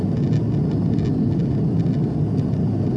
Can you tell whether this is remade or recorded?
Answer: recorded